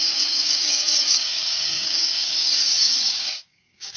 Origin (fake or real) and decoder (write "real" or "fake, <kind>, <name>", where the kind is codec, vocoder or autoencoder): fake, codec, DAC